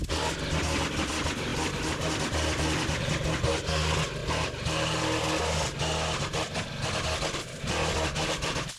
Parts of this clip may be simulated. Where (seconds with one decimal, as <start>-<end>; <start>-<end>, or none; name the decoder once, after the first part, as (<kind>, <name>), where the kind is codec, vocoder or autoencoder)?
none